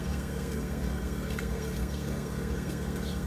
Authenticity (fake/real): fake